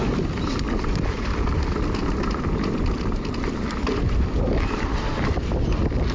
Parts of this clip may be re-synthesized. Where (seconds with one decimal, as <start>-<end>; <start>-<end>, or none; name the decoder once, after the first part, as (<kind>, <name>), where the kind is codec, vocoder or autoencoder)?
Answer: none